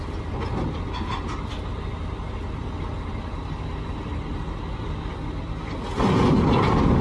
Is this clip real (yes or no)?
yes